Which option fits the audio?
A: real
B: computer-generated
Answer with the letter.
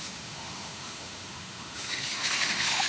B